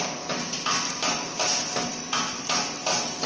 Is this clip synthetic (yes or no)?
yes